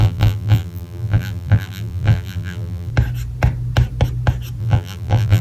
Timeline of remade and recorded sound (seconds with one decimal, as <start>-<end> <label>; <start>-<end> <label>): 0.0-2.9 remade; 2.9-4.6 recorded; 4.6-5.4 remade